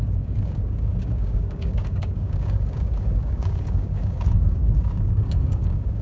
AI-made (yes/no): yes